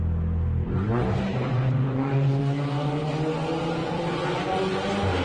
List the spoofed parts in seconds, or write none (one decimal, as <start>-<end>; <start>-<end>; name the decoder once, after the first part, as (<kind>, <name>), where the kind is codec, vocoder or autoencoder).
1.5-2.4 (vocoder, Vocos); 3.8-4.8